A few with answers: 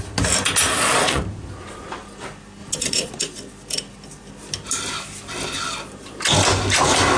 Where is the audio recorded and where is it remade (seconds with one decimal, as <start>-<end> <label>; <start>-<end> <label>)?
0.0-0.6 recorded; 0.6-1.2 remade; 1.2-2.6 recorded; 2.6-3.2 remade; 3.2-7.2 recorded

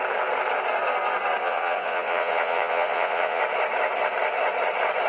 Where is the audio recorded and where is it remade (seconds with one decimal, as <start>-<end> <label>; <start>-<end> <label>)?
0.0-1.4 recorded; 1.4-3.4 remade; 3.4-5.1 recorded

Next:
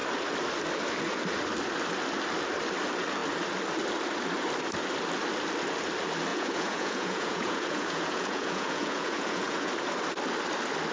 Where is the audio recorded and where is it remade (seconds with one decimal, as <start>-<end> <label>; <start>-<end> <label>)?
0.0-6.3 recorded; 6.3-9.7 remade; 9.7-10.9 recorded

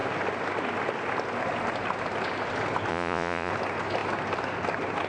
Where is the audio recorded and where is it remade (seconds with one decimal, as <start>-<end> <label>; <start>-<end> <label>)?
0.0-2.9 recorded; 2.9-3.5 remade; 3.5-5.1 recorded

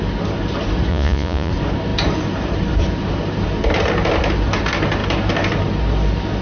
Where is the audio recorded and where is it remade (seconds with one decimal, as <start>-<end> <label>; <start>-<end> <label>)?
0.0-0.9 recorded; 0.9-1.5 remade; 1.5-6.4 recorded

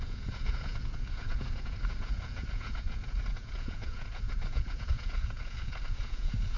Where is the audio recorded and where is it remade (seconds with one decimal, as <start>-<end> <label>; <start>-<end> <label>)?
0.0-6.6 remade